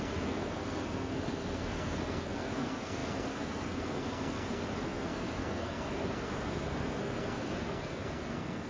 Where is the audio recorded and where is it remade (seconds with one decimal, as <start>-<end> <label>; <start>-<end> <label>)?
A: 0.0-8.7 remade